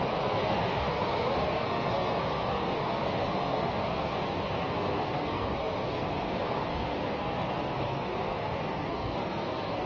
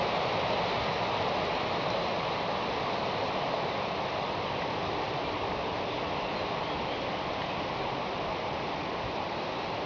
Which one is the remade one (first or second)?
first